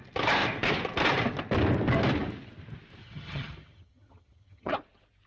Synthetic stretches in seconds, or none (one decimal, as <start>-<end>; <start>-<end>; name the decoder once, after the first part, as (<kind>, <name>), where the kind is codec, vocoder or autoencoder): 3.0-4.7 (vocoder, HiFi-GAN)